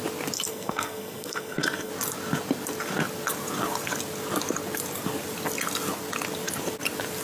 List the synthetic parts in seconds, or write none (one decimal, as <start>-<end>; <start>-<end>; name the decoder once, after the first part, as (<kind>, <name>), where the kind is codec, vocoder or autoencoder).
0.5-1.9 (codec, SNAC)